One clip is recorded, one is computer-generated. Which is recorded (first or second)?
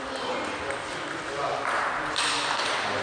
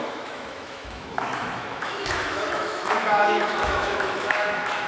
first